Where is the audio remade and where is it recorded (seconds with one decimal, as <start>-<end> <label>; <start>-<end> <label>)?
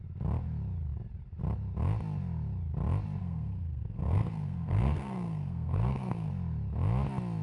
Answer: 0.0-3.2 recorded; 3.2-6.3 remade; 6.3-7.4 recorded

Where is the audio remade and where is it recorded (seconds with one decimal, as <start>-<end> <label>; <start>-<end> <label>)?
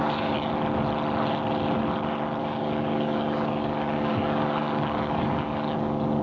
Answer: 0.0-0.5 remade; 0.5-2.4 recorded; 2.4-6.2 remade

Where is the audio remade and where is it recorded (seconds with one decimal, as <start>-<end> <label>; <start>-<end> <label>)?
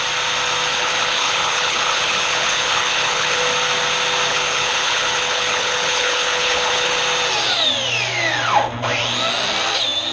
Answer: 0.0-0.7 recorded; 0.7-3.4 remade; 3.4-4.3 recorded; 4.3-7.0 remade; 7.0-10.1 recorded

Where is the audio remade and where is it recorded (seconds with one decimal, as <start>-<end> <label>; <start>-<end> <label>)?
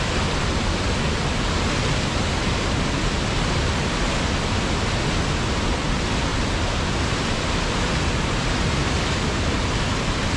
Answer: 0.0-10.4 recorded